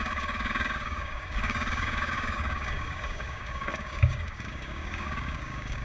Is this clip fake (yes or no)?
yes